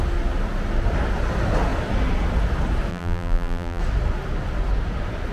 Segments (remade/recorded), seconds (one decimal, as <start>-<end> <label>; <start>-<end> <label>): 0.0-2.9 recorded; 2.9-3.8 remade; 3.8-5.3 recorded